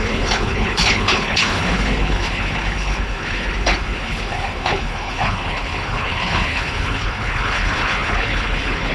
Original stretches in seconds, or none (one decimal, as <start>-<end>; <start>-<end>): none